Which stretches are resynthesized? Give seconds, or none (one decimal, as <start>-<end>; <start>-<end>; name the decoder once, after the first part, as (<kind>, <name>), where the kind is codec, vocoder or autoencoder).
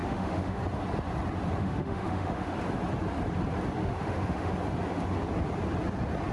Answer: 0.0-0.6 (autoencoder, DAC-VAE); 1.6-2.5; 3.8-4.5